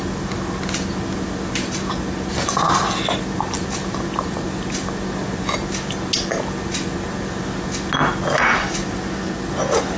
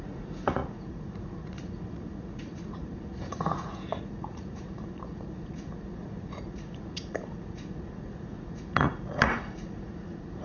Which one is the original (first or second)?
first